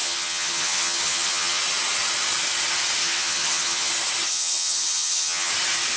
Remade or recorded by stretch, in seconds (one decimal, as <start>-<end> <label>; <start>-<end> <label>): 0.0-1.6 remade; 1.6-3.0 recorded; 3.0-3.9 remade; 3.9-4.3 recorded; 4.3-5.5 remade; 5.5-6.0 recorded